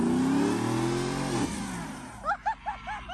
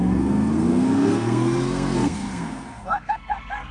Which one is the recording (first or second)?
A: first